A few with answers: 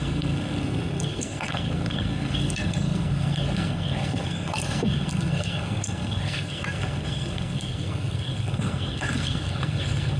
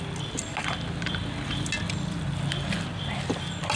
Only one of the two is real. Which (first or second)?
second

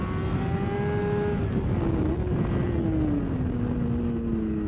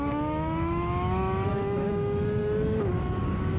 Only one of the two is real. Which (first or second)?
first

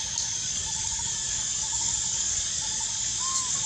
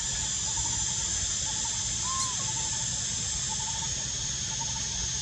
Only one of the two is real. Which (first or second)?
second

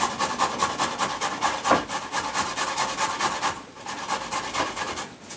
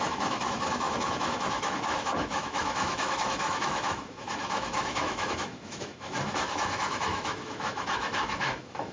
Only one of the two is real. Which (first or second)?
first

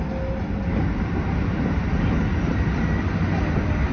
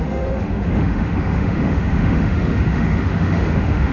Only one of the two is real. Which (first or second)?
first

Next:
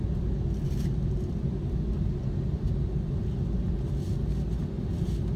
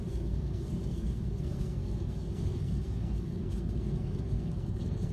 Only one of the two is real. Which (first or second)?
first